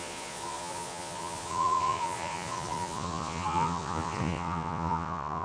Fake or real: fake